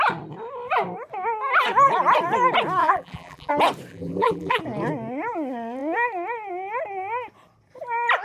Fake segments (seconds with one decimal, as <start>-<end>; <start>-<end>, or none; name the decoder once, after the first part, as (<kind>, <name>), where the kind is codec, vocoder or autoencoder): 2.8-3.5 (vocoder, BigVGAN v2); 3.9-4.6